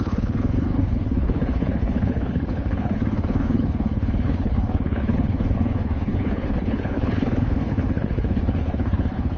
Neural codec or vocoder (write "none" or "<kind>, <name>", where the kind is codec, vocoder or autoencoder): codec, HILCodec